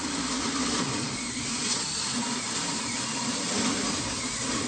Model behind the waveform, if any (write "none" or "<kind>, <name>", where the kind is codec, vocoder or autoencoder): none